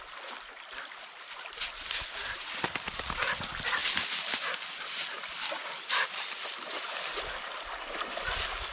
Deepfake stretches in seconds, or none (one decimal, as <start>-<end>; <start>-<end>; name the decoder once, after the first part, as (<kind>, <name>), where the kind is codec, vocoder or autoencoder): 2.2-2.7 (vocoder, BigVGAN v2); 5.6-7.6